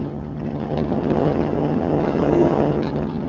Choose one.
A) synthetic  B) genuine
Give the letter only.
A